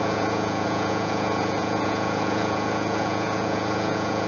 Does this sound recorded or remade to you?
remade